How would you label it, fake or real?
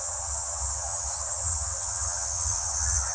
fake